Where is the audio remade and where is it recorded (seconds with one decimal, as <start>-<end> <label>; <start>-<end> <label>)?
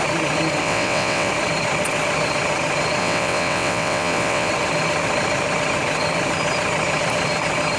0.0-0.6 recorded; 0.6-1.3 remade; 1.3-3.0 recorded; 3.0-4.5 remade; 4.5-7.8 recorded